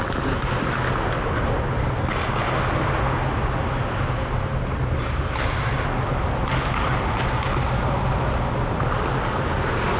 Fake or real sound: real